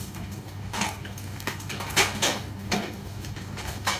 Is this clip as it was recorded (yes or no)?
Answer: no